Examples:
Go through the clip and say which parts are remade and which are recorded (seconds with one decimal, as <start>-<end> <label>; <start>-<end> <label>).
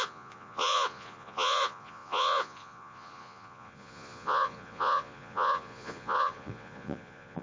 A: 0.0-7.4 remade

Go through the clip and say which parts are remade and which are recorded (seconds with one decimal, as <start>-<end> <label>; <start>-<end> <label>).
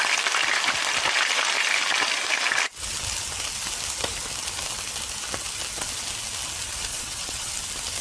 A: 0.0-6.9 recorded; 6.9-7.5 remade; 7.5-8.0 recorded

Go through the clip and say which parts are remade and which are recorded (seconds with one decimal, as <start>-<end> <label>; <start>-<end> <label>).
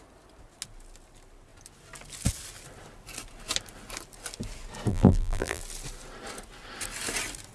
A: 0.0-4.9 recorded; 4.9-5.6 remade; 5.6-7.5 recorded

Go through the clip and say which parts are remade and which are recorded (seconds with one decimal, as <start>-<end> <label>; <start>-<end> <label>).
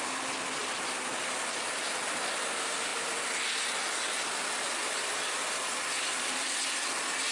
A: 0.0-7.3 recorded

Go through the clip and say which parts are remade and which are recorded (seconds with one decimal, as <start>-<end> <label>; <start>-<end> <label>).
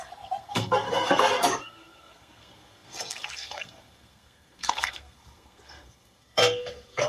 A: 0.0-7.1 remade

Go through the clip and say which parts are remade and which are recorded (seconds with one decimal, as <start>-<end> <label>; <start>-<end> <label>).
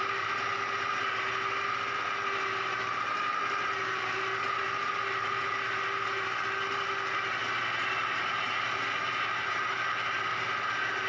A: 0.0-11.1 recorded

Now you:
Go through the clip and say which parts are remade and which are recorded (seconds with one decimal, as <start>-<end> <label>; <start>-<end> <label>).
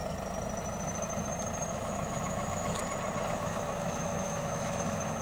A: 0.0-1.7 recorded; 1.7-2.8 remade; 2.8-3.3 recorded; 3.3-5.2 remade